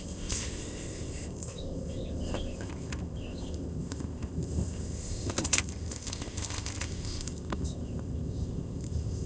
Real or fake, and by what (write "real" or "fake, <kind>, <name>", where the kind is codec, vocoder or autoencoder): fake, codec, ZipCodec